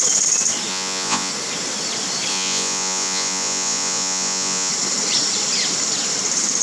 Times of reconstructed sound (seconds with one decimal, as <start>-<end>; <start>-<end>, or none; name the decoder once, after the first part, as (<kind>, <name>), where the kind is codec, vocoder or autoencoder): 0.7-1.3 (vocoder, Vocos); 2.3-4.7